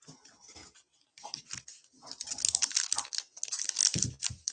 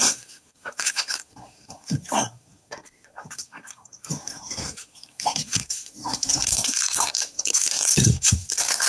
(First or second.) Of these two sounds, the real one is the first